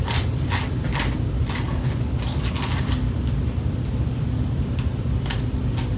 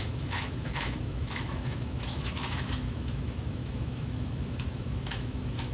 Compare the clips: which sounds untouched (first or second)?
first